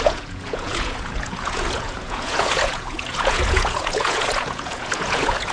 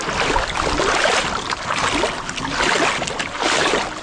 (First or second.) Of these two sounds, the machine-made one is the first